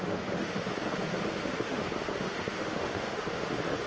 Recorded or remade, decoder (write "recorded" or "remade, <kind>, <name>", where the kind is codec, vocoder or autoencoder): remade, autoencoder, DAC-VAE